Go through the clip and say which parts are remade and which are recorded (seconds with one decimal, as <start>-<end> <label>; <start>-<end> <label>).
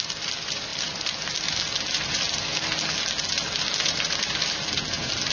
0.0-5.3 recorded